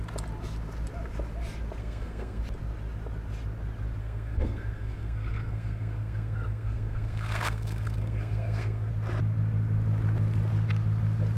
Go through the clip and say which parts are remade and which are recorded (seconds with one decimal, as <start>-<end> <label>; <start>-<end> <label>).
0.0-1.8 recorded; 1.8-2.4 remade; 2.4-4.0 recorded; 4.0-8.9 remade; 8.9-11.4 recorded